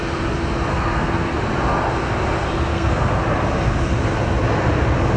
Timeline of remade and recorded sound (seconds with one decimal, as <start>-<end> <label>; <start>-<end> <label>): 0.0-0.7 recorded; 0.7-1.4 remade; 1.4-2.7 recorded; 2.7-3.2 remade; 3.2-5.2 recorded